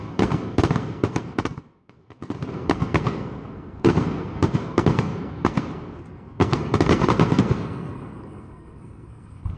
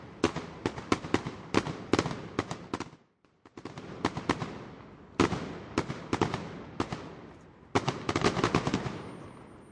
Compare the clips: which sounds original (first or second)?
second